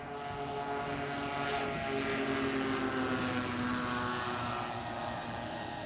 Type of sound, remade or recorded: recorded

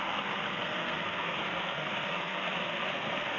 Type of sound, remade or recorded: remade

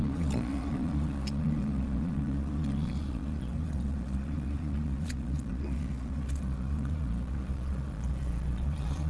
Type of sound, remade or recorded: remade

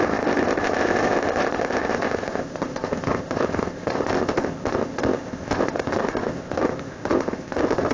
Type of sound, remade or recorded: remade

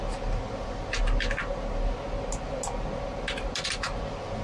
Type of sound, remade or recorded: recorded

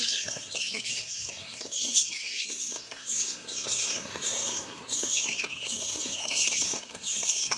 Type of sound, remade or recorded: remade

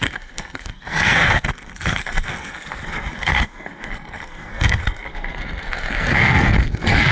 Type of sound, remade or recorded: remade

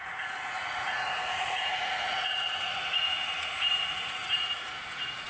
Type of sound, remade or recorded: remade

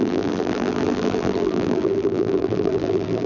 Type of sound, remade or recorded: remade